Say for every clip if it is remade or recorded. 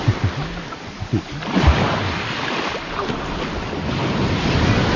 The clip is recorded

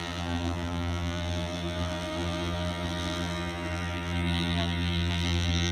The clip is remade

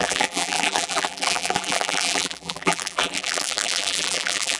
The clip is remade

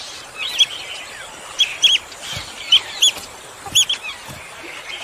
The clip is recorded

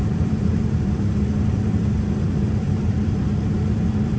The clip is remade